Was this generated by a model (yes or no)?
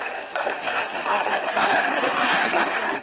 yes